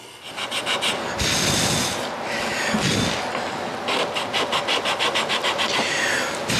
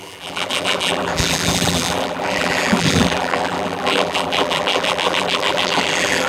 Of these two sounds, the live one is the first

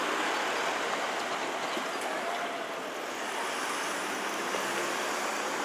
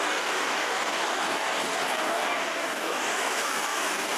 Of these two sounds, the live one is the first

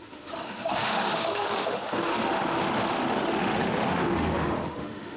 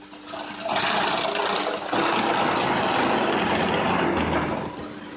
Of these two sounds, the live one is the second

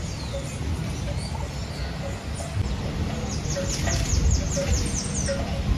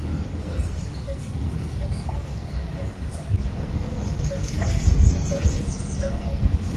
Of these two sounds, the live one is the first